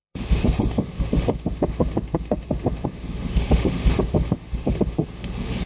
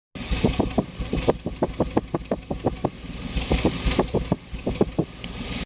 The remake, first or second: first